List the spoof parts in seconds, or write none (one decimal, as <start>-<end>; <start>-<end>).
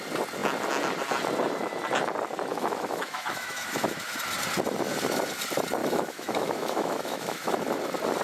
2.5-4.2; 5.8-7.5